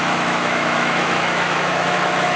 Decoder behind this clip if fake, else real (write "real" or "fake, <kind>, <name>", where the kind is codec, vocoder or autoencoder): fake, autoencoder, DAC-VAE